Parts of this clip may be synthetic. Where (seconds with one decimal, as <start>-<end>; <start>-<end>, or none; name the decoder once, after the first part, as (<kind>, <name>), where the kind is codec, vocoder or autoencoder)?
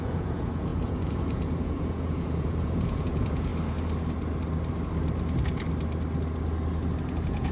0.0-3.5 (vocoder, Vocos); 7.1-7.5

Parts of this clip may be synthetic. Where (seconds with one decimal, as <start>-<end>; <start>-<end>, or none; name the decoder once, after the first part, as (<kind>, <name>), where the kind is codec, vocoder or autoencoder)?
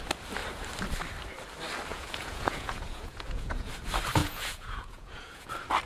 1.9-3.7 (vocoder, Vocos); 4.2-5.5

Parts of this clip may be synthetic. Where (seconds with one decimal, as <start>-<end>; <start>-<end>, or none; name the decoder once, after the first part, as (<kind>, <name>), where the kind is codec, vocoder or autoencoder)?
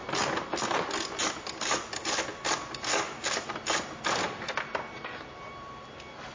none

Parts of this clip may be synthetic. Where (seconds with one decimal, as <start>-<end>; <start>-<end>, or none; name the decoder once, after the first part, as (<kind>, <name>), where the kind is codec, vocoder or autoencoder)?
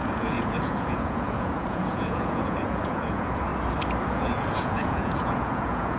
0.0-3.5 (vocoder, Vocos); 4.1-6.0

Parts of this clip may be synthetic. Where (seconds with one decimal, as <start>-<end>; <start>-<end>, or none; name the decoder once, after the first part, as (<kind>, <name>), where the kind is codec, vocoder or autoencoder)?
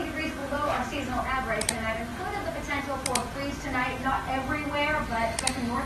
0.4-1.3 (vocoder, Vocos); 2.1-2.8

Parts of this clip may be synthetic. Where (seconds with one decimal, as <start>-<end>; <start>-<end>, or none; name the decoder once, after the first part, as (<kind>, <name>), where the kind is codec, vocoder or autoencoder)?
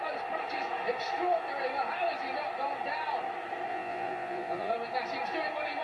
3.7-4.7 (vocoder, Vocos)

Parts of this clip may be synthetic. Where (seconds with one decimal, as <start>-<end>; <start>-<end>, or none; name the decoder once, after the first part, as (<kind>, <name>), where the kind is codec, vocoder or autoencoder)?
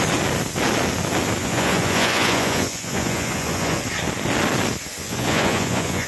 1.4-3.8 (vocoder, Vocos); 5.0-6.1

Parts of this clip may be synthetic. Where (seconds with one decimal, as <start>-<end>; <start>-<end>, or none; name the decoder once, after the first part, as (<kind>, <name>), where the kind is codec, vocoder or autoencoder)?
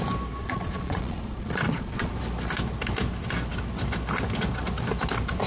0.4-2.1 (vocoder, Vocos)